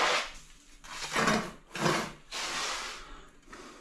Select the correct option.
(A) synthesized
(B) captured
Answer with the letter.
B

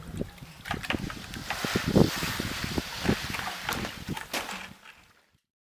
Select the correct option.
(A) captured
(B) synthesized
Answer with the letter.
A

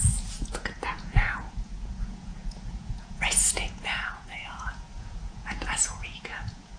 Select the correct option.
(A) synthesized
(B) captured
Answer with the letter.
A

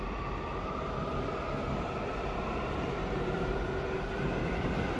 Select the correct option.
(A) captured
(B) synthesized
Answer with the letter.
A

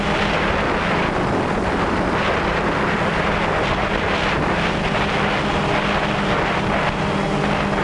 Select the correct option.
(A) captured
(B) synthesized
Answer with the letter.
A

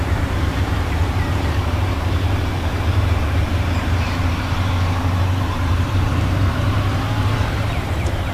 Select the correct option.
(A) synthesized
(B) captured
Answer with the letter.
A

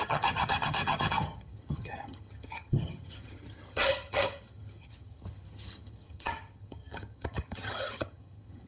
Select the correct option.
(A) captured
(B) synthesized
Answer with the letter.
B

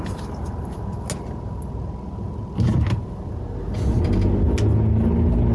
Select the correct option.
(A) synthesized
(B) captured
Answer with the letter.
B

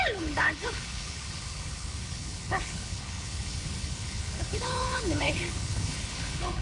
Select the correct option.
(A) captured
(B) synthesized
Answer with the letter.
B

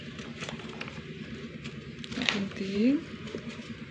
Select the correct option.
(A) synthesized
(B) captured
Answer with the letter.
A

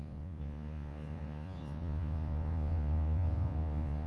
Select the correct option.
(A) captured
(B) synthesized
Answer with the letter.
B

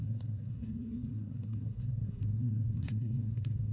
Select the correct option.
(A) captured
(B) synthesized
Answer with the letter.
B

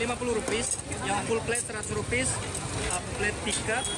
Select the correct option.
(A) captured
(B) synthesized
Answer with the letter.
A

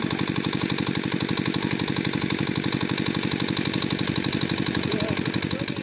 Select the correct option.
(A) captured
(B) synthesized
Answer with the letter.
A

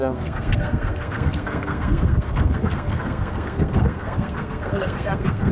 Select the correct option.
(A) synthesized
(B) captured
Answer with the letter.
A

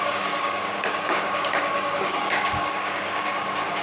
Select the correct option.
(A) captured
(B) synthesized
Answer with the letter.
B